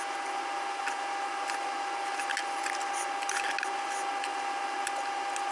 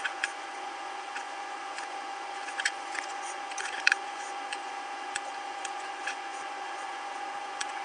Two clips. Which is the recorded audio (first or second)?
first